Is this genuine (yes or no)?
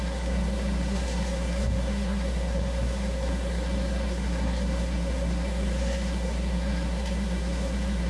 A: no